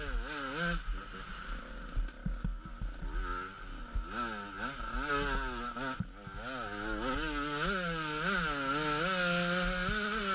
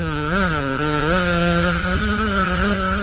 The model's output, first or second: second